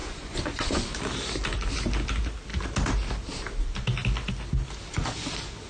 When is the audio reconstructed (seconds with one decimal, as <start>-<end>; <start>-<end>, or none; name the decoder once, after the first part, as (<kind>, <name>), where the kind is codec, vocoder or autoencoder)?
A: 0.0-1.0 (vocoder, Vocos); 4.9-5.7